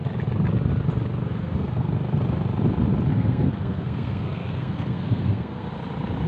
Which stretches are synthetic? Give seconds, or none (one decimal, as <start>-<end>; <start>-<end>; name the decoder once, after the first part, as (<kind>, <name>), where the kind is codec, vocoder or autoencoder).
1.2-1.9 (codec, SNAC); 3.1-5.7